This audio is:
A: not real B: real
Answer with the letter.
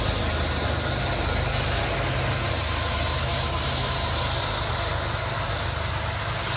B